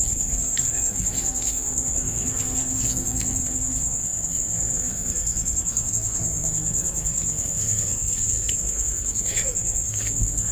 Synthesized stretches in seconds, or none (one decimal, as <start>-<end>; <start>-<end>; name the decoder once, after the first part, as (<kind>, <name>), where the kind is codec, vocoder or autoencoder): 0.0-10.5 (codec, SNAC)